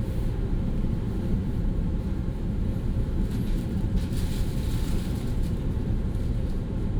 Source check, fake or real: fake